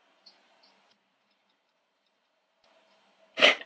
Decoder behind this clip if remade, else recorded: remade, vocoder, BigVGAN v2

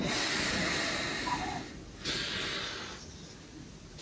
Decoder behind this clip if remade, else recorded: recorded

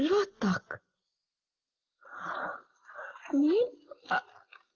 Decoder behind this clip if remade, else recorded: recorded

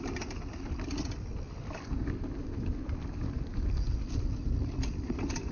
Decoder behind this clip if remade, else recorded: recorded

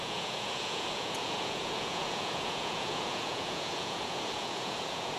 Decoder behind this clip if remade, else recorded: remade, vocoder, Vocos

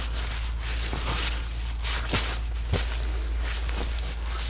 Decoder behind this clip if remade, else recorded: recorded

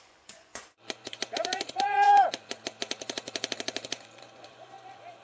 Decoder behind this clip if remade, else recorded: remade, vocoder, Vocos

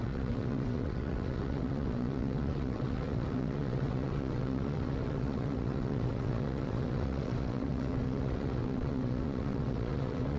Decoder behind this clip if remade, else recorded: remade, vocoder, WaveNeXt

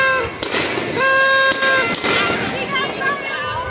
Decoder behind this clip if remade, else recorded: recorded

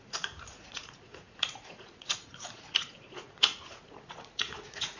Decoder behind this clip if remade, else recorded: remade, vocoder, Vocos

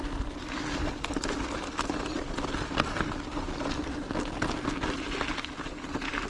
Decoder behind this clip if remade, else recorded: recorded